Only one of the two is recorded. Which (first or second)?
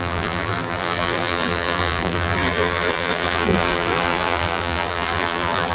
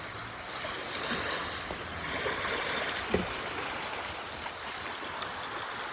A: second